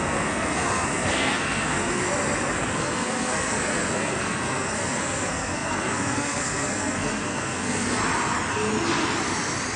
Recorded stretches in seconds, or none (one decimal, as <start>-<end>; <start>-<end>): 2.0-2.5; 8.0-9.8